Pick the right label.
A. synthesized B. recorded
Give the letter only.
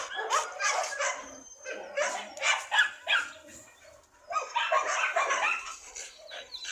B